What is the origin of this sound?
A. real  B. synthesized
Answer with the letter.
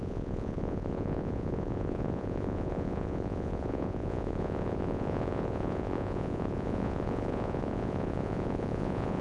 B